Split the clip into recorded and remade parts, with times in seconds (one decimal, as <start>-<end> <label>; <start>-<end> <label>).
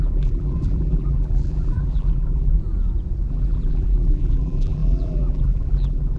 0.0-2.5 remade; 2.5-3.3 recorded; 3.3-6.2 remade